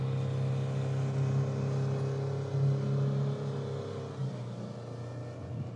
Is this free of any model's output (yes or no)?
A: yes